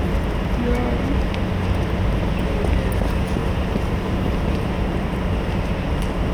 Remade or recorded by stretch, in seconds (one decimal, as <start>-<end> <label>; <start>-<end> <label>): 0.0-3.4 recorded; 3.4-4.7 remade; 4.7-6.3 recorded